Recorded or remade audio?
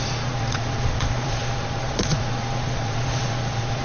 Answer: remade